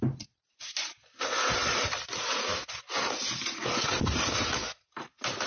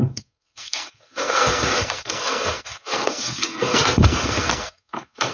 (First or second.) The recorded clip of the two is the first